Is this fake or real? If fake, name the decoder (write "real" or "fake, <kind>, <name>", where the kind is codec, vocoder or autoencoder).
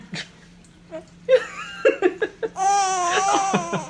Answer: real